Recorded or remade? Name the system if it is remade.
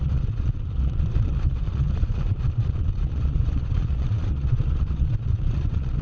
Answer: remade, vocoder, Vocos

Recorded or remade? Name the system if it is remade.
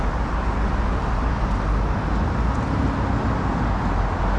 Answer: recorded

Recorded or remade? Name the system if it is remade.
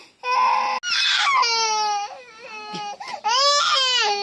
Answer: recorded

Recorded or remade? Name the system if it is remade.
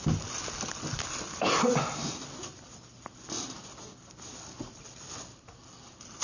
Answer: recorded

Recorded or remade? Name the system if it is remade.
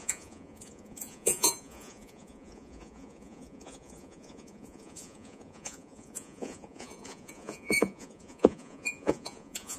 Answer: remade, vocoder, Vocos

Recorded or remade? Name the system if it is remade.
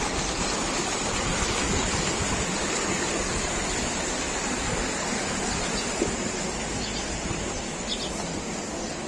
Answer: recorded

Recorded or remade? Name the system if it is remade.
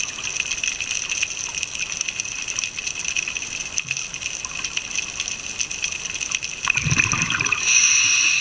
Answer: recorded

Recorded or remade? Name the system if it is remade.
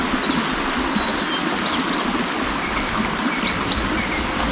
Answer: recorded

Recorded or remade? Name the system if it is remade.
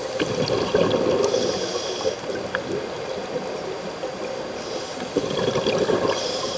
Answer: recorded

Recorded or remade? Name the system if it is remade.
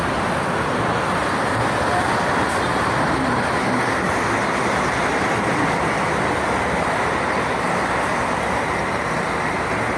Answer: recorded